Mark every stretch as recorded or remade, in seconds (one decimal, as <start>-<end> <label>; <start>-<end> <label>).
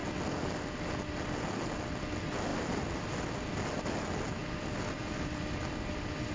0.0-6.3 recorded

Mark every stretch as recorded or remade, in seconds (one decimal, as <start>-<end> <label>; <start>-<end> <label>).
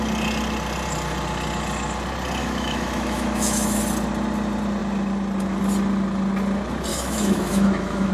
0.0-2.4 recorded; 2.4-3.8 remade; 3.8-6.9 recorded; 6.9-8.1 remade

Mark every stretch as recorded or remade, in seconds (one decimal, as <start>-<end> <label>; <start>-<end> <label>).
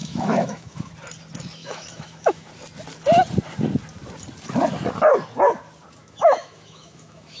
0.0-0.9 remade; 0.9-1.6 recorded; 1.6-2.5 remade; 2.5-6.0 recorded; 6.0-7.4 remade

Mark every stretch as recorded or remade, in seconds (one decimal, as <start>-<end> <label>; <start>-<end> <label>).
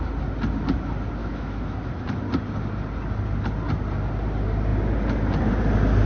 0.0-1.2 recorded; 1.2-1.9 remade; 1.9-6.1 recorded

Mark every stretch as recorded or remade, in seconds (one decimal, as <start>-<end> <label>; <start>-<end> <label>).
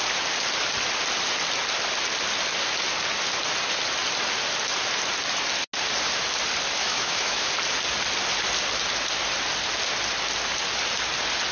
0.0-6.8 recorded; 6.8-7.5 remade; 7.5-11.5 recorded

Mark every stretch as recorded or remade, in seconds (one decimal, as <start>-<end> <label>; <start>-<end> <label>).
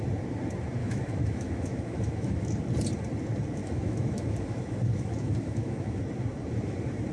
0.0-0.8 recorded; 0.8-2.5 remade; 2.5-3.6 recorded; 3.6-6.0 remade; 6.0-7.1 recorded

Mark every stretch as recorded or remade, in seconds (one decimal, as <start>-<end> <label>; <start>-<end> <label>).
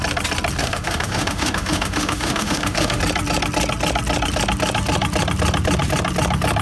0.0-0.6 recorded; 0.6-3.0 remade; 3.0-6.6 recorded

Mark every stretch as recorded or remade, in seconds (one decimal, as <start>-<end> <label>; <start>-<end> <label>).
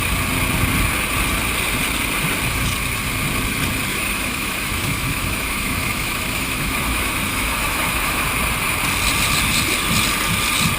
0.0-3.9 recorded; 3.9-8.2 remade; 8.2-10.8 recorded